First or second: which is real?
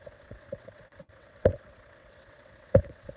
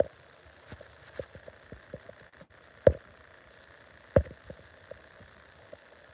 second